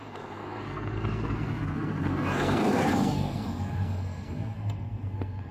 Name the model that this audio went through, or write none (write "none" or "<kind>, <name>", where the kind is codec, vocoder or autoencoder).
codec, SNAC